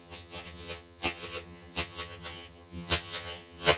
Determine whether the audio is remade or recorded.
remade